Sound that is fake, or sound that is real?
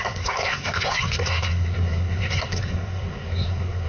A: fake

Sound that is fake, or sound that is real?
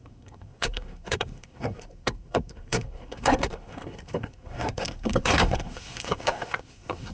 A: fake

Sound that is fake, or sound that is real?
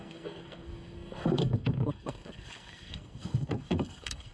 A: fake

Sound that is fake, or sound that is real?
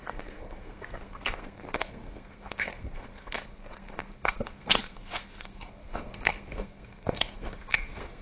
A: fake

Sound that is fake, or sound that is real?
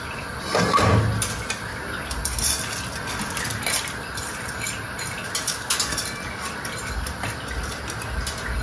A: real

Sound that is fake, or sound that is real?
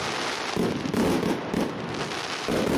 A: real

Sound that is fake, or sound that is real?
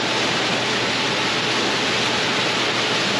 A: real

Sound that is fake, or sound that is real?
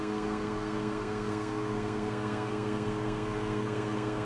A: fake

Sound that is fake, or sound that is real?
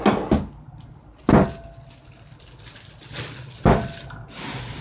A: real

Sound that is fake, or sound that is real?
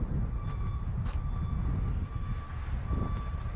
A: real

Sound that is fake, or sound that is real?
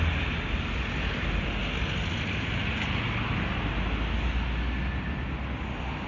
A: real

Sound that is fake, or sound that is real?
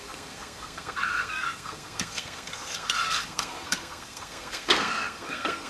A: fake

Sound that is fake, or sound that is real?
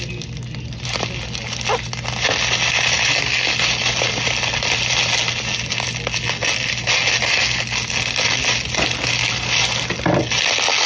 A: real